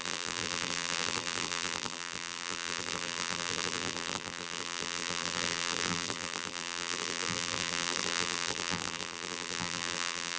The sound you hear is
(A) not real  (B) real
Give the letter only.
A